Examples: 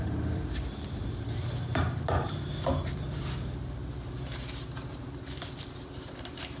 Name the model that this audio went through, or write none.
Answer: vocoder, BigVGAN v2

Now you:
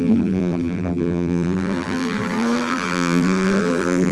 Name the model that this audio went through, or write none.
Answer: vocoder, BigVGAN v2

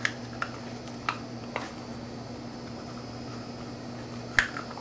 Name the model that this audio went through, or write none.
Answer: none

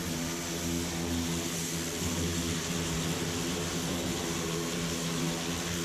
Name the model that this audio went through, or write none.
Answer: none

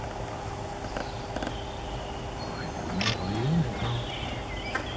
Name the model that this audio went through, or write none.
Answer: none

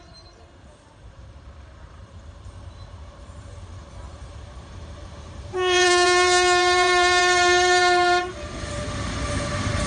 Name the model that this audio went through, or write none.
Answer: vocoder, BigVGAN v2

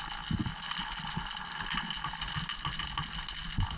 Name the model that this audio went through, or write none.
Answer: none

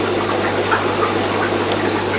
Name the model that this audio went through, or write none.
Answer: none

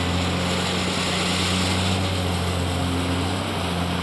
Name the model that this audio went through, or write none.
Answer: none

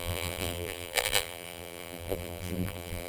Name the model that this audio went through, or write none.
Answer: vocoder, BigVGAN v2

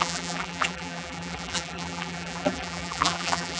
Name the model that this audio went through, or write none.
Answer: vocoder, BigVGAN v2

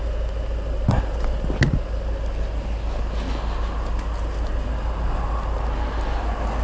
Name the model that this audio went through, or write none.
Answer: none